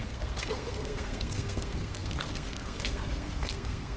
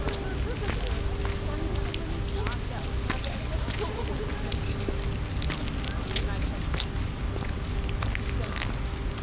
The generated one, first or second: first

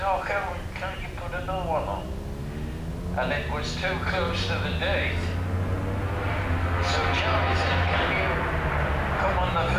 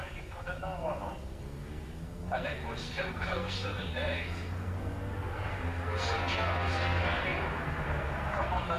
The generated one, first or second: second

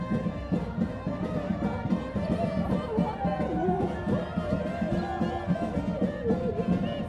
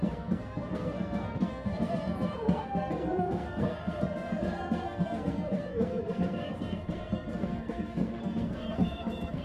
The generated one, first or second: second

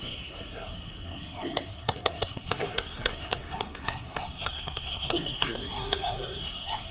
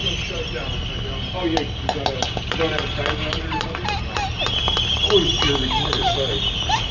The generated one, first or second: first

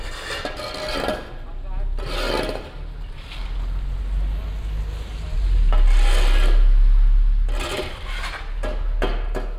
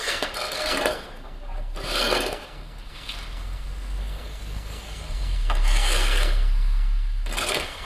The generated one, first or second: second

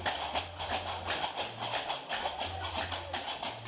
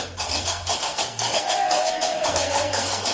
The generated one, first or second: second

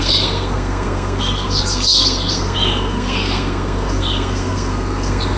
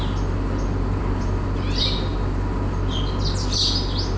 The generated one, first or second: first